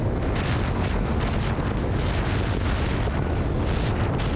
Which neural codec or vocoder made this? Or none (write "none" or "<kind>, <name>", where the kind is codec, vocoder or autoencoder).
none